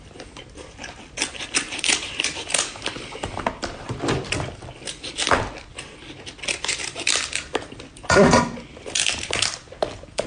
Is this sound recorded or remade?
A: recorded